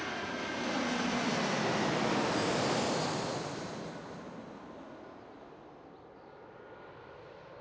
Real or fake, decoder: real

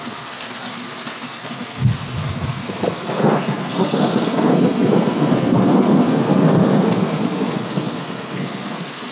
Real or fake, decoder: fake, codec, SNAC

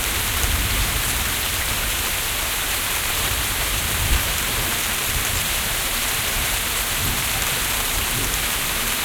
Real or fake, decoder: fake, vocoder, BigVGAN v2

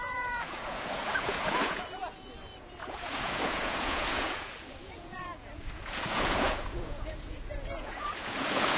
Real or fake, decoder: fake, vocoder, Vocos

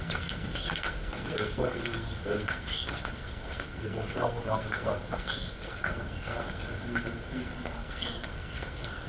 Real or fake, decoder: fake, codec, SNAC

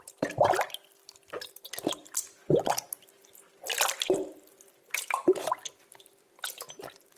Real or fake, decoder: real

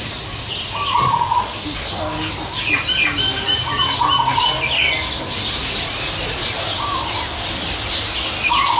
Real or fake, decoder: real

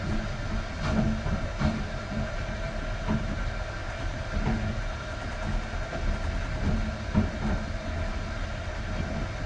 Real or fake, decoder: real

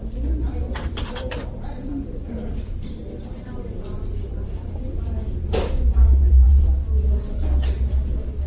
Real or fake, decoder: fake, vocoder, BigVGAN v2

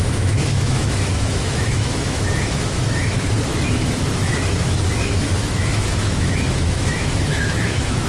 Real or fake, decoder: fake, autoencoder, DAC-VAE